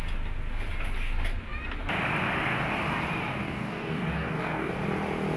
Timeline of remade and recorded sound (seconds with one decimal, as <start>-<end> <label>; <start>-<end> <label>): 0.0-3.4 recorded; 3.4-4.7 remade; 4.7-5.4 recorded

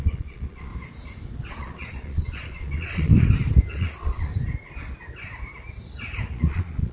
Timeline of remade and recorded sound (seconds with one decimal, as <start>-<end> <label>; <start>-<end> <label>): 0.0-0.7 remade; 0.7-1.5 recorded; 1.5-3.1 remade; 3.1-3.7 recorded; 3.7-4.3 remade; 4.3-6.3 recorded; 6.3-6.9 remade

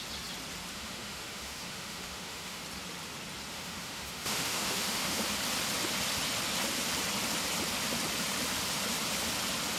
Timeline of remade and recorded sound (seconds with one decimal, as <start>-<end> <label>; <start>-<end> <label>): 0.0-0.7 recorded; 0.7-2.6 remade; 2.6-3.5 recorded; 3.5-5.2 remade; 5.2-9.8 recorded

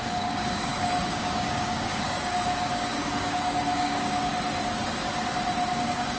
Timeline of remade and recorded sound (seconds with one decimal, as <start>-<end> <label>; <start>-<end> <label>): 0.0-4.3 remade; 4.3-5.7 recorded; 5.7-6.2 remade

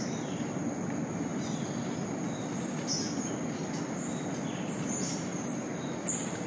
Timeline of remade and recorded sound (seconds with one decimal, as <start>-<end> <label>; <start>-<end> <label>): 0.0-6.5 recorded

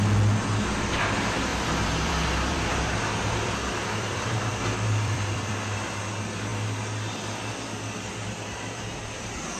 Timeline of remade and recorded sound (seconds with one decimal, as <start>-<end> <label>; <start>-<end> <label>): 0.0-1.5 recorded; 1.5-5.5 remade; 5.5-9.6 recorded